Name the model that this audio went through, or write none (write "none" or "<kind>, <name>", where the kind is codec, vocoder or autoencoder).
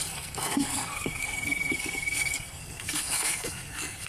codec, SNAC